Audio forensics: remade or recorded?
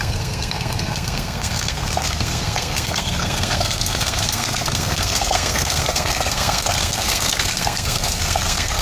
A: remade